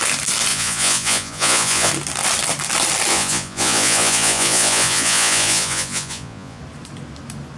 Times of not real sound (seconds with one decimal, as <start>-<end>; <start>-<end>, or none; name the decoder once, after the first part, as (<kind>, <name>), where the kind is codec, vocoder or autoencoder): 0.5-1.9 (vocoder, Vocos); 3.1-6.6